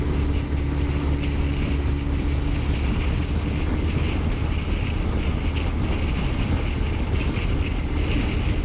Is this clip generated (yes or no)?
no